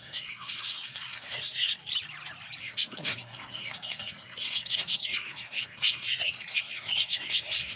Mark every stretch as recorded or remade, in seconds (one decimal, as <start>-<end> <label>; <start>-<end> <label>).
0.0-1.8 remade; 1.8-2.6 recorded; 2.6-7.8 remade